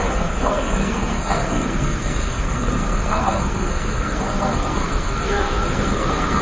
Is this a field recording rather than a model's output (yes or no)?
no